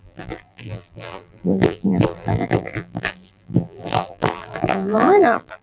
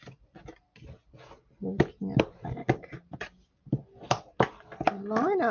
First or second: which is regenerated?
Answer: first